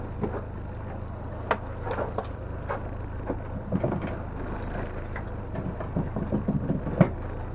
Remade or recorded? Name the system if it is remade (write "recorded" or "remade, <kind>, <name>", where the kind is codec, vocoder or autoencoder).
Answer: recorded